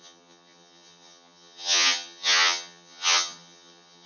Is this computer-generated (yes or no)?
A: yes